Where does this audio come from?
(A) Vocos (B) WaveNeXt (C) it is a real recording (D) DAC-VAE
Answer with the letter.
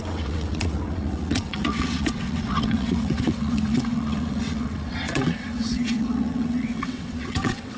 B